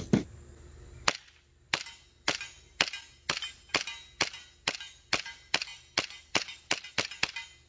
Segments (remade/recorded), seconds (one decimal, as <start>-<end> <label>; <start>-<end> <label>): 0.0-7.7 recorded